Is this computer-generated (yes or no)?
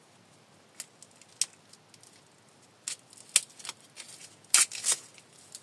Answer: no